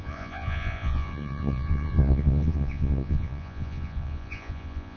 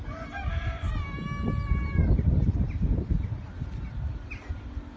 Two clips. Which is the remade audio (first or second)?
first